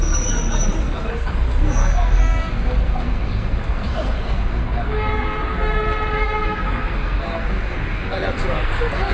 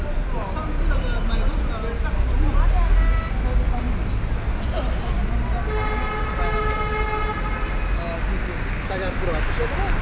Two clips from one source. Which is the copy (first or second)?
first